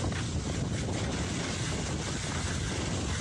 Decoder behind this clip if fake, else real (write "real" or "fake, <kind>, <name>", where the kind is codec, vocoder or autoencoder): real